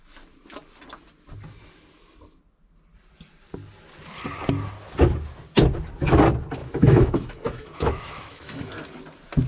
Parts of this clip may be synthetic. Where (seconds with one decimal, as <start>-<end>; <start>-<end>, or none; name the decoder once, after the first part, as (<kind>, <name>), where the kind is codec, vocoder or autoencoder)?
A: 6.6-8.7 (autoencoder, DAC-VAE)